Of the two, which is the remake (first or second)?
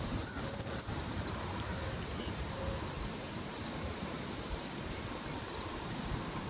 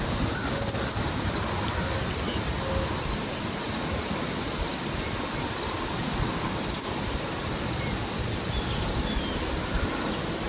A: first